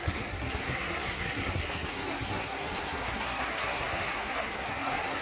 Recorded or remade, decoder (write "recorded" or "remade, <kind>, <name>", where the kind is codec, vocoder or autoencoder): remade, codec, SNAC